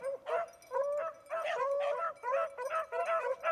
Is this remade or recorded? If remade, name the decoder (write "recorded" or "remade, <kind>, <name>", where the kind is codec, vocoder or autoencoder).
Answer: recorded